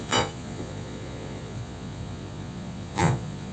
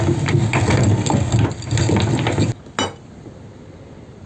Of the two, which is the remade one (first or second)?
first